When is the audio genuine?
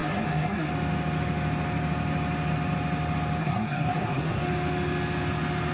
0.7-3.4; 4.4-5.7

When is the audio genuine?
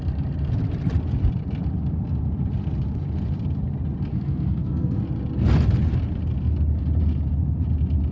0.0-4.1; 5.0-8.1